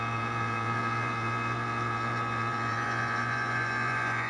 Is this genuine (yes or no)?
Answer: no